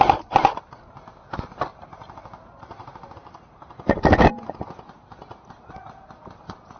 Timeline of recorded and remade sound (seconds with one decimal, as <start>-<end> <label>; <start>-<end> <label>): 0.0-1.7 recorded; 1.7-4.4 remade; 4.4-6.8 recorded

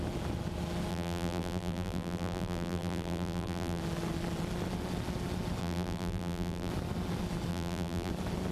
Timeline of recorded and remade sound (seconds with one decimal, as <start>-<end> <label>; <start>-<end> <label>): 0.0-0.9 recorded; 0.9-3.8 remade; 3.8-5.6 recorded; 5.6-6.7 remade; 6.7-7.5 recorded; 7.5-8.1 remade; 8.1-8.5 recorded

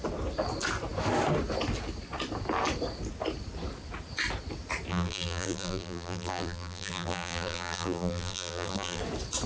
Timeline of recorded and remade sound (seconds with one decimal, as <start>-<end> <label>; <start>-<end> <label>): 0.0-4.9 recorded; 4.9-9.0 remade; 9.0-9.5 recorded

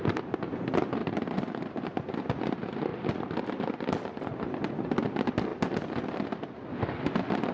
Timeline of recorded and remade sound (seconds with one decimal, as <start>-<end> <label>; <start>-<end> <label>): 0.0-1.0 recorded; 1.0-1.6 remade; 1.6-2.9 recorded; 2.9-4.7 remade; 4.7-7.5 recorded

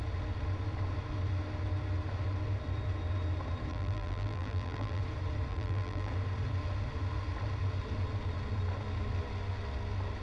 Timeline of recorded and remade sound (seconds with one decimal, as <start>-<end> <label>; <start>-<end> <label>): 0.0-3.7 recorded; 3.7-5.0 remade; 5.0-5.5 recorded; 5.5-6.1 remade; 6.1-10.2 recorded

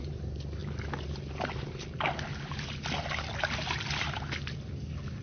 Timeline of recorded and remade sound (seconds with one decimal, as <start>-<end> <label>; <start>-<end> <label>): 0.0-5.2 recorded